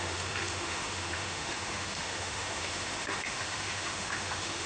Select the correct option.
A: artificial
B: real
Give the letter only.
A